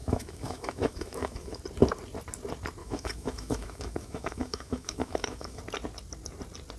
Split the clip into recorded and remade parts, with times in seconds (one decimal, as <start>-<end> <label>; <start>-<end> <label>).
0.0-1.6 remade; 1.6-2.8 recorded; 2.8-5.6 remade; 5.6-6.8 recorded